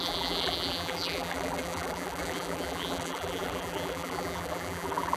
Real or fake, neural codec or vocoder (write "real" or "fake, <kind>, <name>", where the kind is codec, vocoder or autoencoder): fake, vocoder, BigVGAN v2